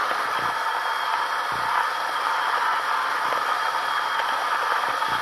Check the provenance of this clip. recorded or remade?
recorded